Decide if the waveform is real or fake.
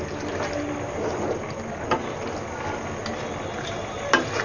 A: real